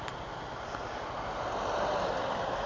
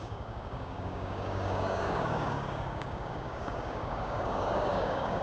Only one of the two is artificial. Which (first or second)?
second